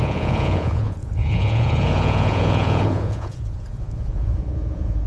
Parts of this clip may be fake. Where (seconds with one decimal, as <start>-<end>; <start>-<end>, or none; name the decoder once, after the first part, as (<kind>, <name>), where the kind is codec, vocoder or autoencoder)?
0.0-5.1 (vocoder, Vocos)